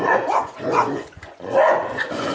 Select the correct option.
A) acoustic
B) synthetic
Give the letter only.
B